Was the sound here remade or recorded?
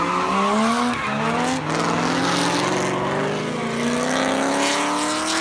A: recorded